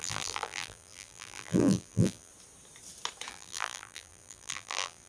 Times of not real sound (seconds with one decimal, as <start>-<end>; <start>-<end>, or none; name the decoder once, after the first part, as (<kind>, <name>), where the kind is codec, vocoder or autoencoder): 0.0-2.3 (vocoder, BigVGAN v2); 3.3-5.1